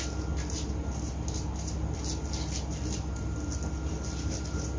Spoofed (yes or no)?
no